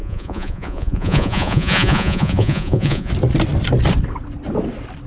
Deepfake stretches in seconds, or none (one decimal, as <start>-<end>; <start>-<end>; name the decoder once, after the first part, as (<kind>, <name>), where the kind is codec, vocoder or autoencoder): 0.0-3.1 (vocoder, Vocos)